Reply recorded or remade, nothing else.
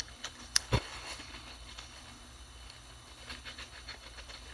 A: remade